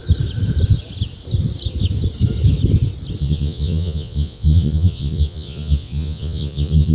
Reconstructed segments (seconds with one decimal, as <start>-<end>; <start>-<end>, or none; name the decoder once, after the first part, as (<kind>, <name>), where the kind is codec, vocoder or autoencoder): 3.2-6.9 (vocoder, Vocos)